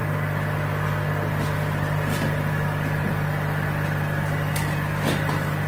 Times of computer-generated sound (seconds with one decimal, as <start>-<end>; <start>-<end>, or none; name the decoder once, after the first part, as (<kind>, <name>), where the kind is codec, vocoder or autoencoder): 1.3-5.7 (vocoder, BigVGAN v2)